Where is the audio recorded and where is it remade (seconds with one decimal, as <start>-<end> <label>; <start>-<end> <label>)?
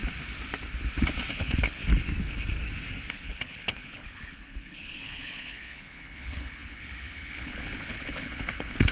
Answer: 0.0-1.3 recorded; 1.3-1.8 remade; 1.8-3.1 recorded; 3.1-8.9 remade